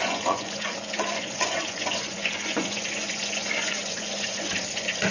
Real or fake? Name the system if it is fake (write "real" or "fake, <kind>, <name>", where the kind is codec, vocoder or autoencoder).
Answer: fake, vocoder, Vocos